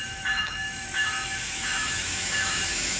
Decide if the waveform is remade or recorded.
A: remade